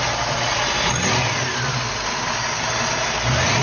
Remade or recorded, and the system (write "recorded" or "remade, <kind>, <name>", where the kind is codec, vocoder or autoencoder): recorded